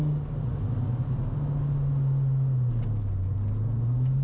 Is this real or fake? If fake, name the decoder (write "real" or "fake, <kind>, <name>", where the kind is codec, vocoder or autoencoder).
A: real